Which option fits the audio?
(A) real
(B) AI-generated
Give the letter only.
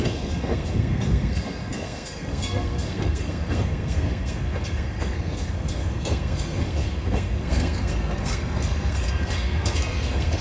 B